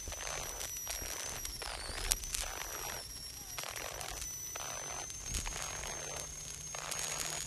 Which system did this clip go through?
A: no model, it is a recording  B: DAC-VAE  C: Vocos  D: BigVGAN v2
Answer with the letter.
A